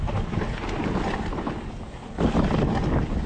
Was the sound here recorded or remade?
recorded